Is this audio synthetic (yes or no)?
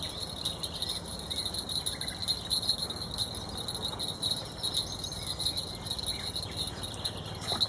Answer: no